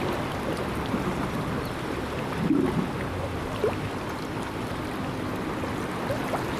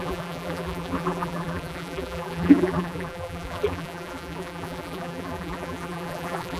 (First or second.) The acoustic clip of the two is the first